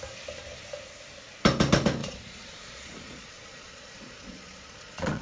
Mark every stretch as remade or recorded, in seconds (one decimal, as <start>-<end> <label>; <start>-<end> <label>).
0.0-2.0 recorded; 2.0-5.2 remade